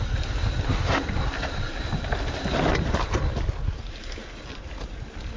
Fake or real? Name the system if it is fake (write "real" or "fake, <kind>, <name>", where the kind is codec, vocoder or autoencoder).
real